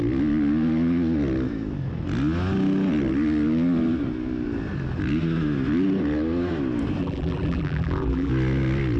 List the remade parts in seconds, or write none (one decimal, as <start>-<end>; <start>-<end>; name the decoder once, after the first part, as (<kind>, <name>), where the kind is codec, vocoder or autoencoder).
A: 7.0-8.3 (vocoder, BigVGAN v2)

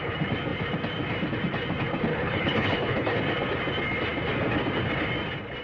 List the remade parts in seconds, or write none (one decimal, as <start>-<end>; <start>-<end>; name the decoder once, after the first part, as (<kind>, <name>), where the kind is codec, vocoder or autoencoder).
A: 2.1-3.2 (codec, HILCodec)

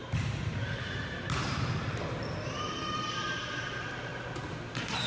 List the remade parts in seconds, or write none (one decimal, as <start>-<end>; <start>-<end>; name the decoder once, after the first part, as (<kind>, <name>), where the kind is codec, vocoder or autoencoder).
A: 0.0-2.2 (vocoder, BigVGAN v2); 4.1-5.1

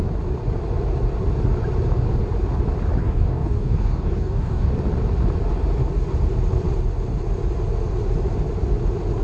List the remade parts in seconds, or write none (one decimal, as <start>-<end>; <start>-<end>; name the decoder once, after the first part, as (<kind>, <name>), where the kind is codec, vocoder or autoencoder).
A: 3.0-4.7 (codec, DAC)

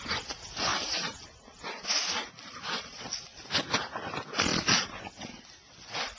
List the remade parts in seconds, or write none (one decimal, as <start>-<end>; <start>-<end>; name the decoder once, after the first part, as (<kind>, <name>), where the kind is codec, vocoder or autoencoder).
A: none

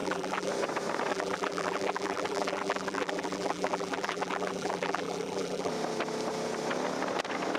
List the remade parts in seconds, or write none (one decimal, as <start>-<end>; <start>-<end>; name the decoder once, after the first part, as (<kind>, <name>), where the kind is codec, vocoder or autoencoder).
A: 0.0-0.5 (vocoder, BigVGAN v2); 1.1-5.7

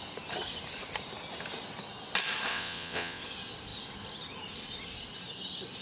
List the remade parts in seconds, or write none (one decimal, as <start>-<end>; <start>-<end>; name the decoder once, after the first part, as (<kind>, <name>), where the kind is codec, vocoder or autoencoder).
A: 2.5-3.2 (vocoder, WaveNeXt)

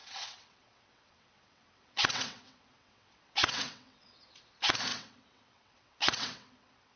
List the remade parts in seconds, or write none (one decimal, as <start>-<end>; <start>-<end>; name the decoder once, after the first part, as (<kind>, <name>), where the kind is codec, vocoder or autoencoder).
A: 0.0-4.2 (vocoder, WaveNeXt); 4.9-7.0